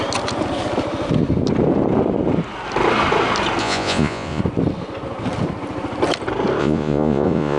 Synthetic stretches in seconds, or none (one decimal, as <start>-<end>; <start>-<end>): 3.6-4.4; 6.6-7.6